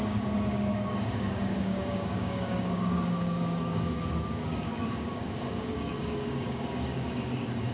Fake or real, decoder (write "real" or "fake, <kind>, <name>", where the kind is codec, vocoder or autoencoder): fake, codec, DAC